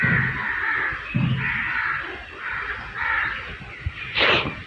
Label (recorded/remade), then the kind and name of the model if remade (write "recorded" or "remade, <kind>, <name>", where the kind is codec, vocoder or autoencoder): recorded